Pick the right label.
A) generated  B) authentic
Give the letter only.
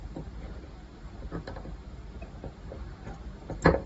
A